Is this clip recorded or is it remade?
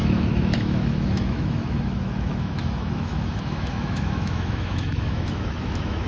remade